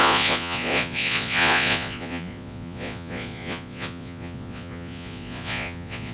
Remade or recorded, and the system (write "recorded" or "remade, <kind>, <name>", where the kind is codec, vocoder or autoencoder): remade, vocoder, Vocos